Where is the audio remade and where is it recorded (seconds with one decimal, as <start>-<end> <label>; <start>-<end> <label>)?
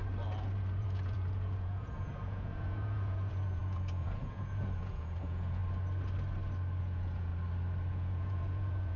0.0-0.8 recorded; 0.8-5.6 remade; 5.6-6.8 recorded; 6.8-7.3 remade; 7.3-7.9 recorded; 7.9-9.0 remade